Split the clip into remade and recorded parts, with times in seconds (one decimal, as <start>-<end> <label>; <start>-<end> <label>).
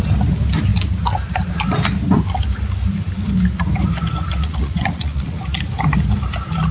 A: 0.0-4.4 recorded; 4.4-5.4 remade; 5.4-6.7 recorded